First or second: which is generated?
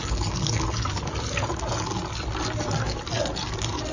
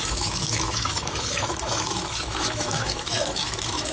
second